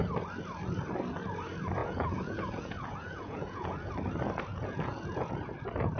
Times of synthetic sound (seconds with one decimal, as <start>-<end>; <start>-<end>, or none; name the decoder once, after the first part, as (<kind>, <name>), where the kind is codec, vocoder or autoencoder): 1.8-3.9 (vocoder, Vocos); 4.5-5.5